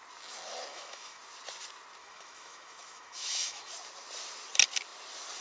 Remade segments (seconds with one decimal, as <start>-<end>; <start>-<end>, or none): 0.7-1.2; 2.0-3.7